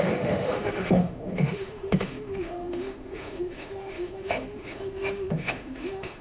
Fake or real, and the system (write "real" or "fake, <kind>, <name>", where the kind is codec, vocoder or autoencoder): fake, autoencoder, DAC-VAE